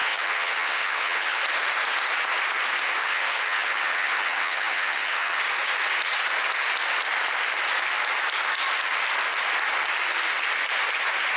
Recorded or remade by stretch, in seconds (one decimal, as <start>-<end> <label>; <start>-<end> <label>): 0.0-1.4 remade; 1.4-3.0 recorded; 3.0-5.4 remade; 5.4-11.4 recorded